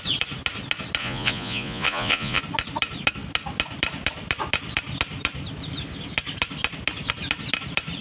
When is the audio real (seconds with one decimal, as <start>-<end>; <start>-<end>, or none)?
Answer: 0.0-1.0; 2.4-8.0